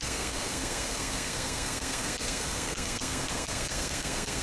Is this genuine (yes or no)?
no